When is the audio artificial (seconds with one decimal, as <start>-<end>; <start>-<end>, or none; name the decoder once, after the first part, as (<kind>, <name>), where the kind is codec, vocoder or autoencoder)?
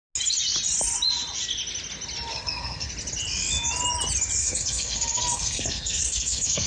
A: 2.3-2.9 (codec, SNAC); 4.4-6.7